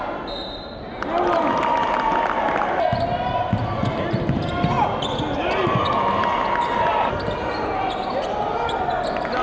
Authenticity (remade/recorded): recorded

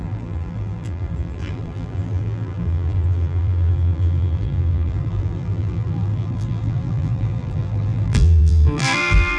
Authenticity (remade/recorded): remade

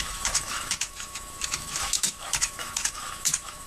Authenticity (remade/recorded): remade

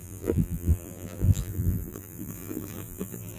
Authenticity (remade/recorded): remade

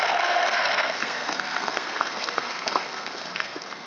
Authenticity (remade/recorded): remade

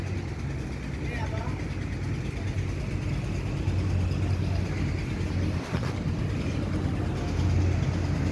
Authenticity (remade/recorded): recorded